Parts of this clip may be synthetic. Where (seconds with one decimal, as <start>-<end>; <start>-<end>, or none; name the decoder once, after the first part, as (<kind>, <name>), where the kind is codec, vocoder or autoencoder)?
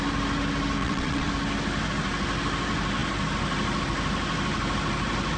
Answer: 0.8-1.3 (vocoder, WaveNeXt)